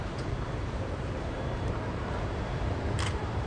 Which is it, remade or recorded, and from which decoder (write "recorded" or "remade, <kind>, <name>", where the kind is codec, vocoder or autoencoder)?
remade, vocoder, BigVGAN v2